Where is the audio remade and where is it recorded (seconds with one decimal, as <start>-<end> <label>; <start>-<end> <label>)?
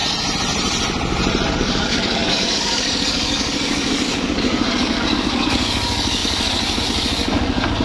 0.0-1.6 recorded; 1.6-7.8 remade